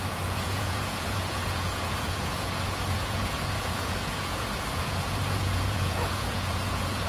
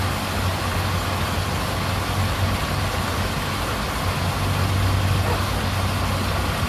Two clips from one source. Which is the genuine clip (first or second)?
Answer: second